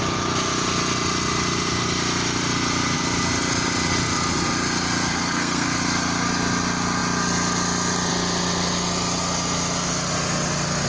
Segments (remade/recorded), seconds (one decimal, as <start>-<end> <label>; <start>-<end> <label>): 0.0-5.1 recorded; 5.1-5.8 remade; 5.8-10.9 recorded